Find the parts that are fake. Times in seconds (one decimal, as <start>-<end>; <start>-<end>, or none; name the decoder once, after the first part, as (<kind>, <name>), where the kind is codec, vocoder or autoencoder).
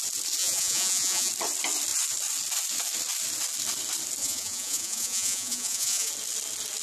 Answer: 0.4-1.3 (vocoder, Vocos); 4.2-6.1